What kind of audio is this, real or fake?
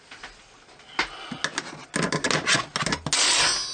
real